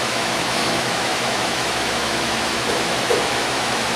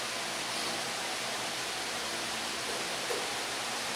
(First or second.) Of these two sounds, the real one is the second